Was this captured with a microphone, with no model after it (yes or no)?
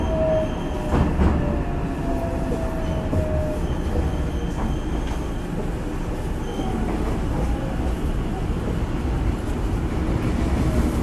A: yes